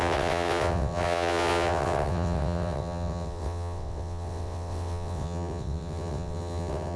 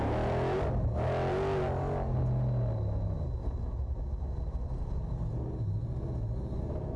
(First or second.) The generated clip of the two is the first